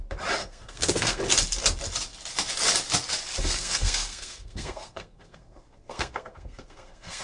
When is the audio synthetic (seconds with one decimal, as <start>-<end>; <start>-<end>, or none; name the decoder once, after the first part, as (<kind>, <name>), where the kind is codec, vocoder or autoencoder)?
0.4-1.2 (codec, SNAC); 3.4-7.2